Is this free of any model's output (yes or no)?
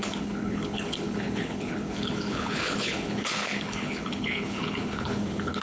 no